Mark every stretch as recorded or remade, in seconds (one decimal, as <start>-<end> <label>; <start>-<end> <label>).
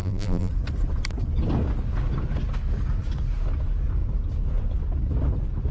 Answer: 0.0-0.5 remade; 0.5-5.7 recorded